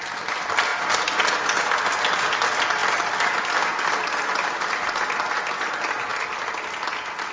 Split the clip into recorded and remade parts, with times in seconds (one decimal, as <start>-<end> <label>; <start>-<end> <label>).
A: 0.0-2.8 recorded; 2.8-4.5 remade; 4.5-7.3 recorded